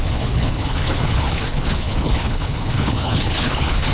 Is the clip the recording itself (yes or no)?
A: no